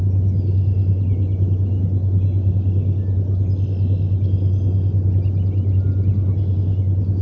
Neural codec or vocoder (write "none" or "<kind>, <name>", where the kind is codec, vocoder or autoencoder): none